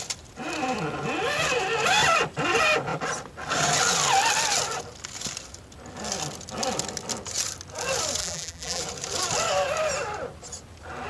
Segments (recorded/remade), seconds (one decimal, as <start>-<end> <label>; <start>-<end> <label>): 0.0-8.2 recorded; 8.2-8.8 remade; 8.8-11.1 recorded